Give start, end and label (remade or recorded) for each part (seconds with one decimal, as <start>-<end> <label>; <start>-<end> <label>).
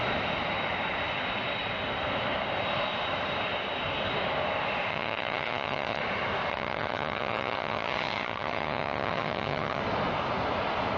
0.0-4.9 recorded; 4.9-6.0 remade; 6.0-6.5 recorded; 6.5-9.8 remade; 9.8-11.0 recorded